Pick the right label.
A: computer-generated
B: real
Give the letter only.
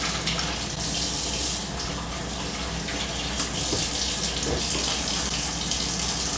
B